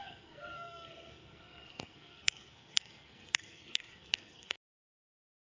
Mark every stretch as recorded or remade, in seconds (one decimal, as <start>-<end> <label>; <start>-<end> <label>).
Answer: 0.0-5.5 remade